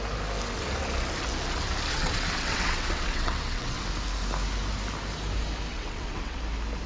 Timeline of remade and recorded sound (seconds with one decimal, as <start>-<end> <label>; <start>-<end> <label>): 0.0-1.9 recorded; 1.9-3.8 remade; 3.8-5.7 recorded; 5.7-6.4 remade; 6.4-6.9 recorded